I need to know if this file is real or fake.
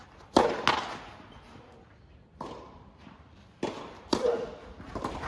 real